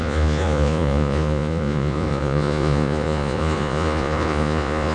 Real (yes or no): no